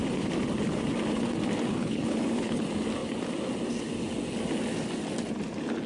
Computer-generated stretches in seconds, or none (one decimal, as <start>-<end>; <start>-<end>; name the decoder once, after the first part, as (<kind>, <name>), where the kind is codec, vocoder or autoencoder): 1.8-2.6 (codec, HILCodec)